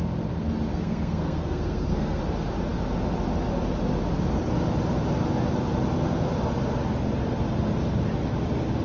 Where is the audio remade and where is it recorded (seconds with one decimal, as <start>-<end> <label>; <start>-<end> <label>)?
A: 0.0-0.7 recorded; 0.7-2.2 remade; 2.2-8.8 recorded